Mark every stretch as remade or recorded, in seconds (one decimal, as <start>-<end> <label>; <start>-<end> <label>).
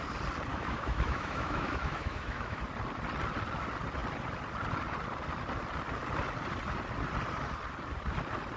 0.0-0.5 recorded; 0.5-2.6 remade; 2.6-8.6 recorded